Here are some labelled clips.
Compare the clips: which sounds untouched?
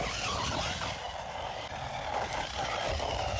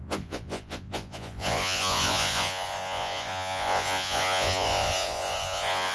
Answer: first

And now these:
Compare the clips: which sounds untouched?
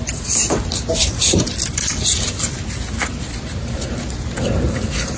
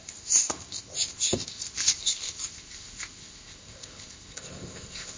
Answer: first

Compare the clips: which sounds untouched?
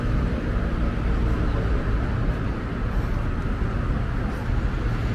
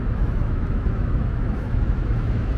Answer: first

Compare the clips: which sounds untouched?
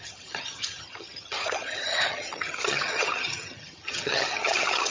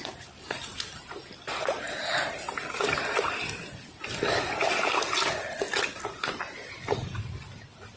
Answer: second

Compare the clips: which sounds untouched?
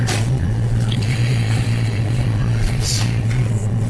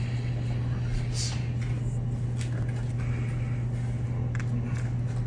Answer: second